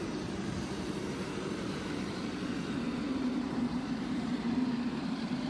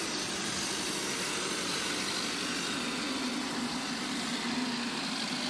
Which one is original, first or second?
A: second